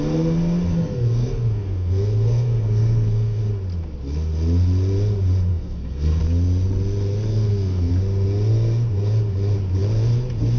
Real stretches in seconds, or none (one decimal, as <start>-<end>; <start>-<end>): 0.0-0.7; 3.4-5.5; 6.2-7.3; 7.9-10.6

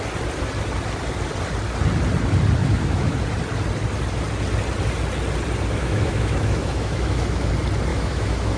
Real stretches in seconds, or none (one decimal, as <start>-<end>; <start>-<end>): 0.0-2.6; 3.2-5.8; 7.5-7.9

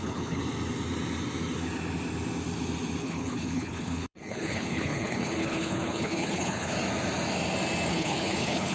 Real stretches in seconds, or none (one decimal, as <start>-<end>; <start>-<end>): 0.4-3.0; 6.7-7.9